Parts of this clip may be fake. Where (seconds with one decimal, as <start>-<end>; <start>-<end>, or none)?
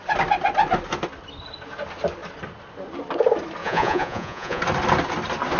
3.6-4.6